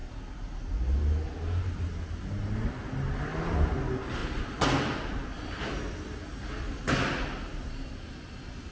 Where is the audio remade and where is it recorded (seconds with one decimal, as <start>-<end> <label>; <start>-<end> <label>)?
0.0-8.7 recorded